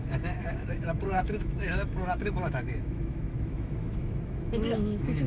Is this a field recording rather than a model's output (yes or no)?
no